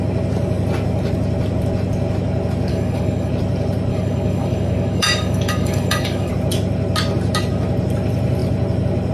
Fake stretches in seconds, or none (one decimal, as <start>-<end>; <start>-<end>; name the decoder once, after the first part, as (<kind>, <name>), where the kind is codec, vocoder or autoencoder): 2.7-3.3 (codec, DAC); 3.9-6.3